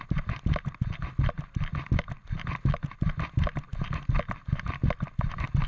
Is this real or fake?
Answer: real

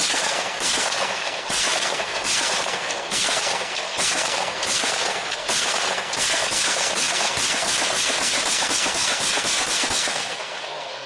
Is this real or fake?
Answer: fake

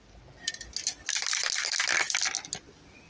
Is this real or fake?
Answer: real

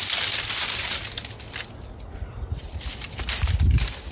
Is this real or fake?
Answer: real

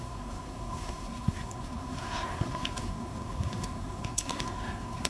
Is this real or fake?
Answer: fake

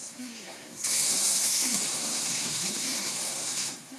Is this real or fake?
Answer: fake